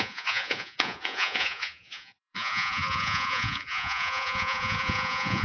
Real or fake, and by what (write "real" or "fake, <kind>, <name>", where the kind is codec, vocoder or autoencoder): fake, vocoder, Vocos